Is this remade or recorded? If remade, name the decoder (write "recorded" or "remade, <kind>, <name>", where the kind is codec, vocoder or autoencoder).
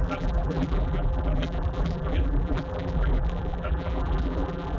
remade, vocoder, BigVGAN v2